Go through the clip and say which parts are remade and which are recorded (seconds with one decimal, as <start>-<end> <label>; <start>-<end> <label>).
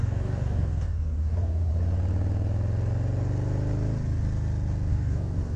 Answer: 0.0-1.7 remade; 1.7-4.9 recorded; 4.9-5.6 remade